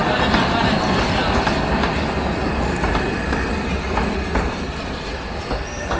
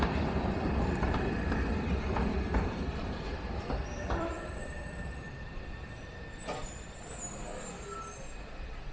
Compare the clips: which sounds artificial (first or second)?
second